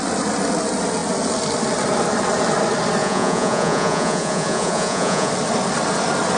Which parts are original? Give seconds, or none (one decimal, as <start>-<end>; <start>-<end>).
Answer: 0.0-3.0; 5.3-6.4